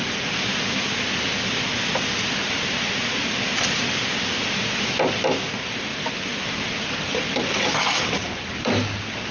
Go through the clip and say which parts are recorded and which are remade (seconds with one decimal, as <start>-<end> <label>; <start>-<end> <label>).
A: 0.0-9.3 recorded